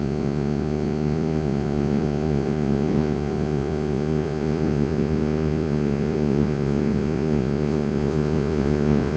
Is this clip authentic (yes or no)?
no